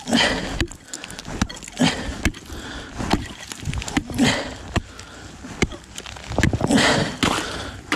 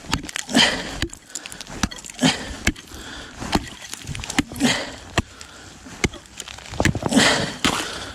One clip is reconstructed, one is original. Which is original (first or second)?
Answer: first